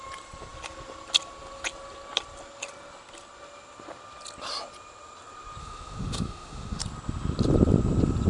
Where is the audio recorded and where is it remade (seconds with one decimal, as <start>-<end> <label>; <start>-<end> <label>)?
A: 0.0-5.6 recorded; 5.6-6.8 remade; 6.8-8.3 recorded